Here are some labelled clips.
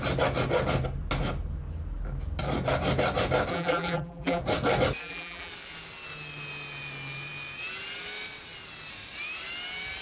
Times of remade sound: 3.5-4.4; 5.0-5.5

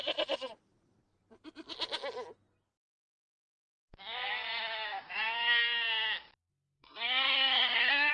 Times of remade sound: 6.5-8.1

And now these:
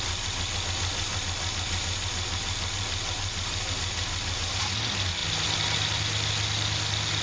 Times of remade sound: none